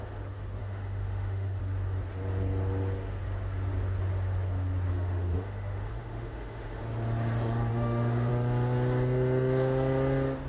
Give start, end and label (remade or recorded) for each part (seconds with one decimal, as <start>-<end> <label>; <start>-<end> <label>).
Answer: 0.0-0.6 recorded; 0.6-1.6 remade; 1.6-4.9 recorded; 4.9-6.8 remade; 6.8-7.7 recorded; 7.7-8.3 remade; 8.3-10.5 recorded